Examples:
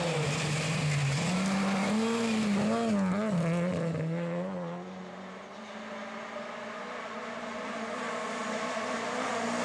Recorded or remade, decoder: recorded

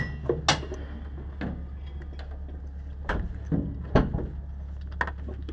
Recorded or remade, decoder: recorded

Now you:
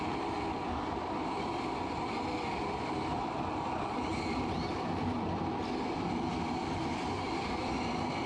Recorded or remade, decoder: recorded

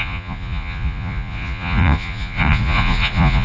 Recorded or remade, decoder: remade, vocoder, Vocos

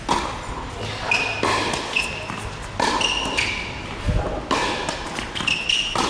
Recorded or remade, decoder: recorded